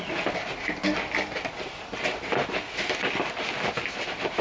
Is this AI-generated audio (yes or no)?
no